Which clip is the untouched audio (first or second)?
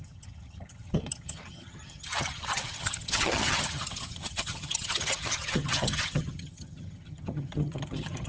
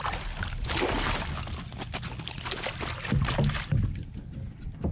second